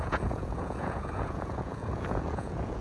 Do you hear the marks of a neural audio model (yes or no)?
yes